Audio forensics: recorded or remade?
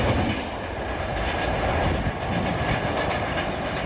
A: recorded